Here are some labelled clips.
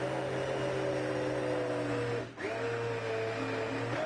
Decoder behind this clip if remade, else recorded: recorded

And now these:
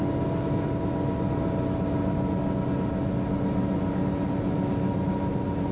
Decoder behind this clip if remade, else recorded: recorded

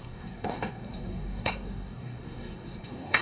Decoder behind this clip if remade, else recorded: remade, codec, SNAC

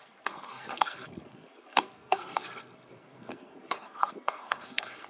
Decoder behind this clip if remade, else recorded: remade, codec, SNAC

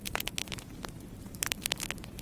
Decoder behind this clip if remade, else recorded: remade, vocoder, BigVGAN v2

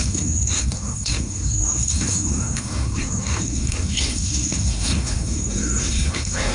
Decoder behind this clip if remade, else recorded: remade, codec, SNAC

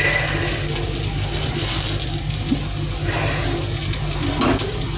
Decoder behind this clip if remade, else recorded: recorded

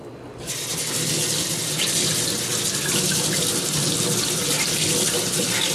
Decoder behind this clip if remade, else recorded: recorded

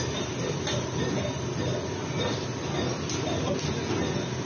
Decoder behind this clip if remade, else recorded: recorded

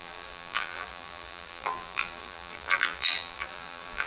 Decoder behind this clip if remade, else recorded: remade, vocoder, BigVGAN v2